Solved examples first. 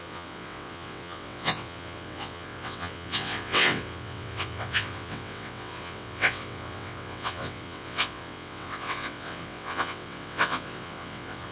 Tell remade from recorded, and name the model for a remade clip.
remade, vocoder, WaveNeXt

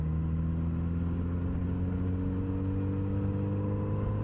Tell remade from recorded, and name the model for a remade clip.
recorded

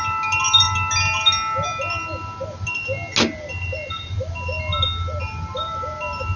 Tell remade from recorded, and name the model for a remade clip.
recorded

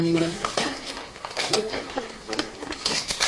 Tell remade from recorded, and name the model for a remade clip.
remade, codec, SNAC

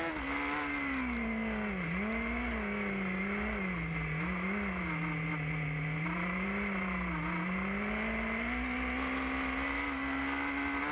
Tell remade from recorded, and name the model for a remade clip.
recorded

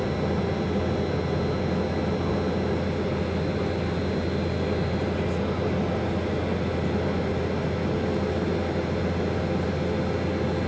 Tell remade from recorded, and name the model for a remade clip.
recorded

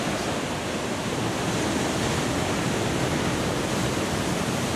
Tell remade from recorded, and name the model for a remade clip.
recorded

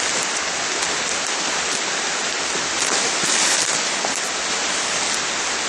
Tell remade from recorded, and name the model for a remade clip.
recorded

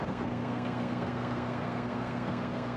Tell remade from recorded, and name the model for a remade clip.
remade, codec, SNAC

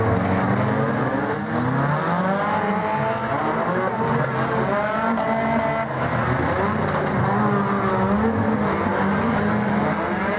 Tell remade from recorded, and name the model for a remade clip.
recorded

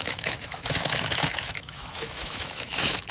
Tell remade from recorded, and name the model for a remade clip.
remade, autoencoder, DAC-VAE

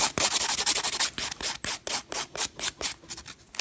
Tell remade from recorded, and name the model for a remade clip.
recorded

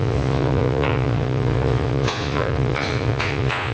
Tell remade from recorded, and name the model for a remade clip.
remade, vocoder, Vocos